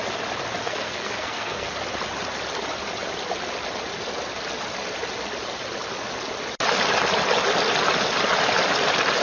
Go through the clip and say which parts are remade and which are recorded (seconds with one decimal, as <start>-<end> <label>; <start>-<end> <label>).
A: 0.0-0.6 recorded; 0.6-1.7 remade; 1.7-9.2 recorded